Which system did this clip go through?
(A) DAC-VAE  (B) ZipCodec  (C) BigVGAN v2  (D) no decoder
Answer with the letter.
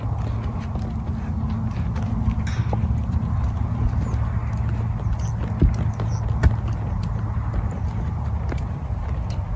D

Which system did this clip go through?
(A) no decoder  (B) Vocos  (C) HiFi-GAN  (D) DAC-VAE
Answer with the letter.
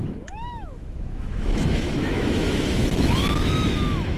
D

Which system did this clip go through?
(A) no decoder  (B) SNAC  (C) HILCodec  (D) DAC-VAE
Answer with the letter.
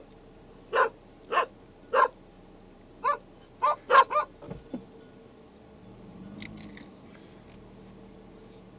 A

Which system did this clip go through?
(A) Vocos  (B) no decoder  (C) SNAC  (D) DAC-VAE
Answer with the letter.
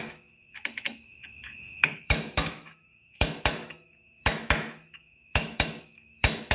D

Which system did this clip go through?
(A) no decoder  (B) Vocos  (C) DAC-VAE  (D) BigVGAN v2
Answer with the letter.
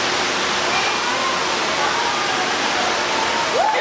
A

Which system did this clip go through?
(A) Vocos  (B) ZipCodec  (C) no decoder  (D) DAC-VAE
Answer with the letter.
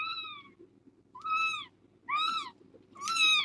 C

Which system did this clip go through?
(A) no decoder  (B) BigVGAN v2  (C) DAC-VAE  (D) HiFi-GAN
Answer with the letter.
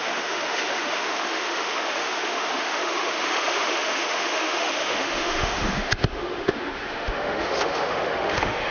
C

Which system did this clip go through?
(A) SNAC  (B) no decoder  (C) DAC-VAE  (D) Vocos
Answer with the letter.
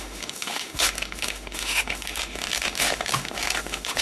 C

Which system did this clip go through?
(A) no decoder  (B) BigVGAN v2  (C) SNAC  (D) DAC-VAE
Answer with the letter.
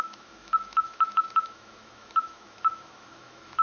D